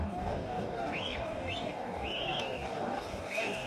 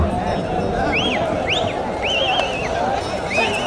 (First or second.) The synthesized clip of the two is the first